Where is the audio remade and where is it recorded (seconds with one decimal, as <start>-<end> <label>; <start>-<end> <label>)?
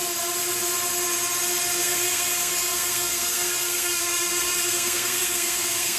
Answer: 0.0-1.8 recorded; 1.8-6.0 remade